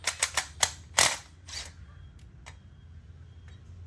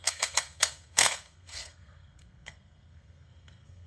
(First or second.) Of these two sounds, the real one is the first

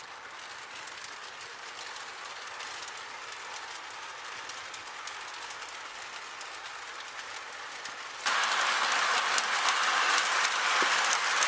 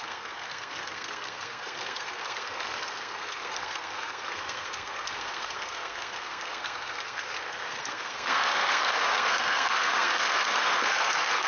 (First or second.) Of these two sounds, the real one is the first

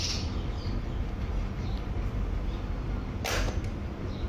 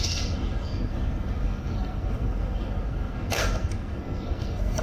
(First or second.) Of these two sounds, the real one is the first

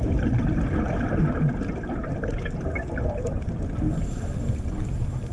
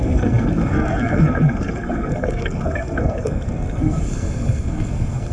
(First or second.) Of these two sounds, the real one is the first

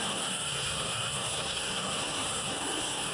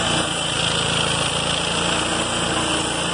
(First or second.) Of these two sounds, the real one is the second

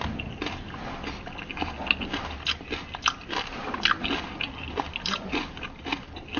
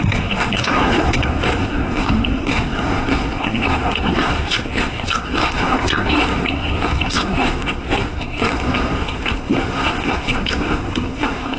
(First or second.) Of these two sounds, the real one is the first